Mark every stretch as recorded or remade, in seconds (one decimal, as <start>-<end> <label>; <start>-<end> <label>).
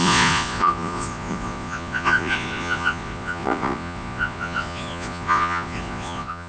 0.0-6.5 remade